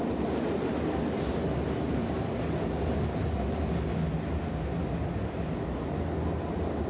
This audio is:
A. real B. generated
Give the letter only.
A